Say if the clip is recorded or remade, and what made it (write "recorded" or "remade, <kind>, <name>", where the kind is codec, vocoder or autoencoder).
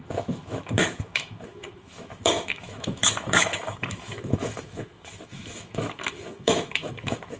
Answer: remade, autoencoder, DAC-VAE